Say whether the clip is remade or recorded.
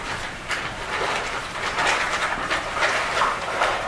remade